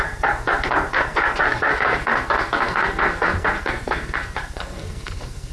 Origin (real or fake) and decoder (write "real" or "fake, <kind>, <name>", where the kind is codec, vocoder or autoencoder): fake, codec, SNAC